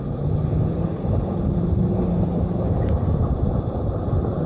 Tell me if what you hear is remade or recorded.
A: remade